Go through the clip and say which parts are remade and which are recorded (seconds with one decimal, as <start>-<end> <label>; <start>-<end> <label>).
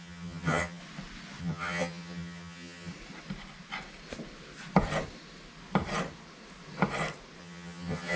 0.0-0.8 remade; 0.8-1.4 recorded; 1.4-2.9 remade; 2.9-7.4 recorded; 7.4-8.2 remade